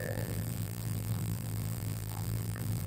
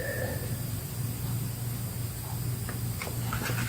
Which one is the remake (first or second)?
first